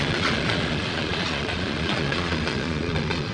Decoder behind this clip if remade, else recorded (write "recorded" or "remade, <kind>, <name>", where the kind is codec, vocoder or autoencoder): remade, vocoder, Vocos